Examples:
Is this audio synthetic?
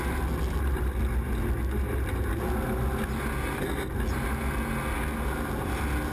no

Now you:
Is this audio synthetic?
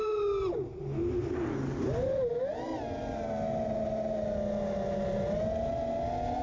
no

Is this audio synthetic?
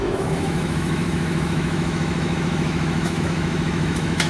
yes